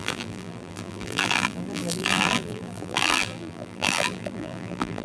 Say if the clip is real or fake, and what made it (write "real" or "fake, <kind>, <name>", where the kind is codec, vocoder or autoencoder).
fake, vocoder, BigVGAN v2